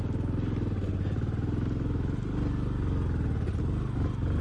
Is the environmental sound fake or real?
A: real